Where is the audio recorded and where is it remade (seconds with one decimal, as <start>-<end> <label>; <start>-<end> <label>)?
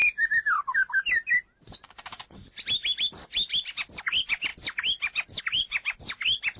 0.0-4.0 recorded; 4.0-4.5 remade; 4.5-5.4 recorded; 5.4-6.6 remade